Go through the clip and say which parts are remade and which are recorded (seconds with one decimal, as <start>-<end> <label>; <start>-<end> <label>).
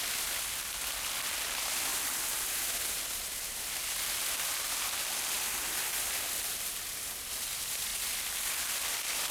0.0-1.9 recorded; 1.9-6.2 remade; 6.2-7.9 recorded; 7.9-9.3 remade